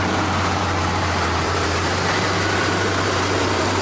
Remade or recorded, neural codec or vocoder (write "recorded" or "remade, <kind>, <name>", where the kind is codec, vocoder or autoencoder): remade, vocoder, BigVGAN v2